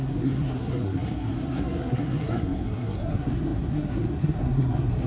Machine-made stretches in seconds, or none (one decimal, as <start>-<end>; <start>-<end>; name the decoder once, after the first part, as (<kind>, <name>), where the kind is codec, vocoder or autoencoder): 0.0-5.1 (codec, SNAC)